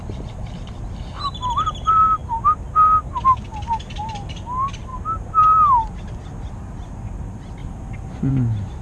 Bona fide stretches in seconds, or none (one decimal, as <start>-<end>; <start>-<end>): 0.0-8.8